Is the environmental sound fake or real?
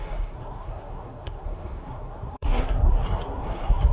fake